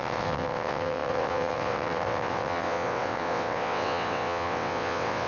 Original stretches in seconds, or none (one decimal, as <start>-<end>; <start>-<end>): none